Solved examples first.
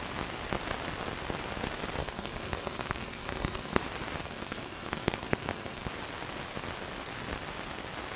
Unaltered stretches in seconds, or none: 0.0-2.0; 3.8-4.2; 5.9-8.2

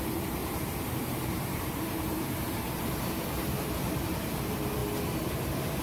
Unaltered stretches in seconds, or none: 0.4-1.0; 4.8-5.8

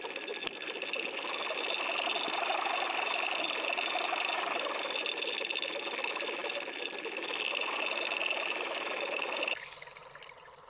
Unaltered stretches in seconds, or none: 0.0-10.7

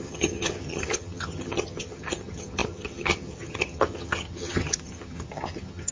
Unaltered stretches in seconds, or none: none

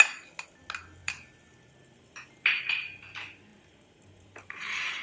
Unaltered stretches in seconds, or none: 0.0-1.0; 2.6-3.5

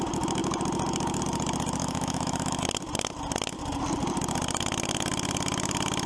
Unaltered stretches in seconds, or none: 0.0-1.8; 2.6-6.1

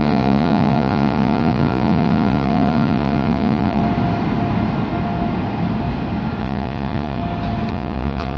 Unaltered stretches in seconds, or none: 3.8-6.4; 7.2-7.7